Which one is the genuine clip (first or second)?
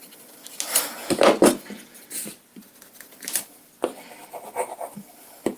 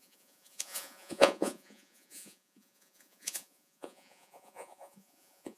first